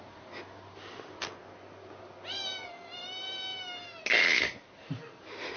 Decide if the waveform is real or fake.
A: real